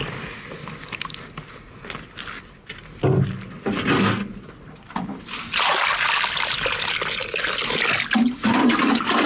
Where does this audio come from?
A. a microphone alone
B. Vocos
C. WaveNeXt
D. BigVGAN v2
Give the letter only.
A